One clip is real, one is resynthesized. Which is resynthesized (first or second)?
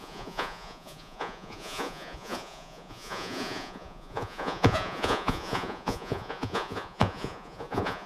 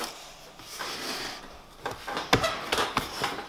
first